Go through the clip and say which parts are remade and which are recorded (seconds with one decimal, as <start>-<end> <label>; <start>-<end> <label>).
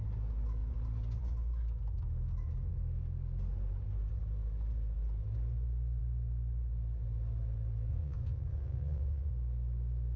0.0-7.9 recorded; 7.9-9.3 remade; 9.3-10.2 recorded